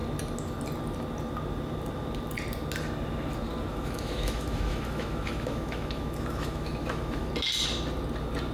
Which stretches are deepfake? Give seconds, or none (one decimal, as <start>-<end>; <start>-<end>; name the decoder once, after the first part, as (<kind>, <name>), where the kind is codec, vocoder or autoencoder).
3.7-7.3 (autoencoder, DAC-VAE)